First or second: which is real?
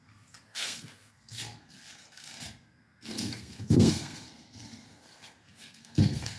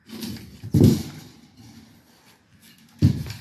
second